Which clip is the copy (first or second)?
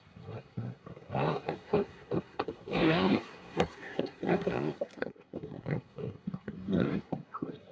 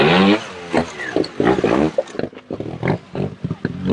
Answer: first